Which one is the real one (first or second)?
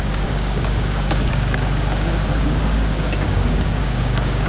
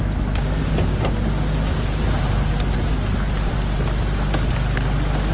second